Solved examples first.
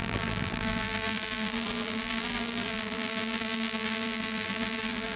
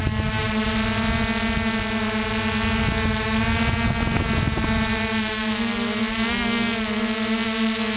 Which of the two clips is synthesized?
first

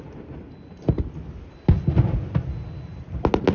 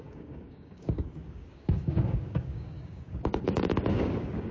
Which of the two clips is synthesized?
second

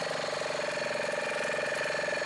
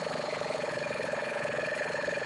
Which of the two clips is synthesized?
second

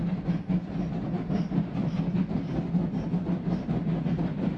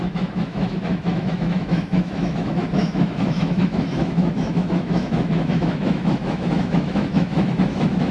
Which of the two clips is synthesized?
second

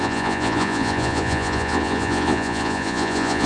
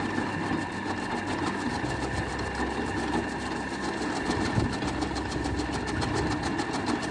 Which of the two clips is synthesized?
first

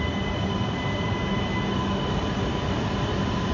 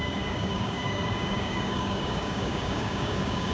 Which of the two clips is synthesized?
second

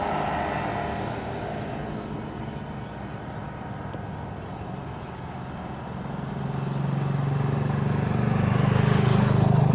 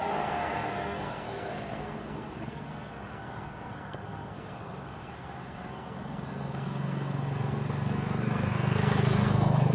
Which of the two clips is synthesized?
second